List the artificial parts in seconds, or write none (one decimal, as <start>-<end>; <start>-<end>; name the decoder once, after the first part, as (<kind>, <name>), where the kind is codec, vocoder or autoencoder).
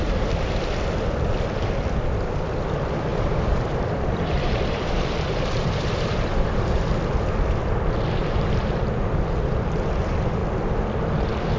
3.1-6.6 (vocoder, BigVGAN v2); 8.2-8.8